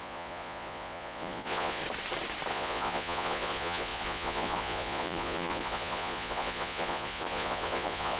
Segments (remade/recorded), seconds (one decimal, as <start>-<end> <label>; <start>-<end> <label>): 0.0-1.8 remade; 1.8-2.5 recorded; 2.5-8.2 remade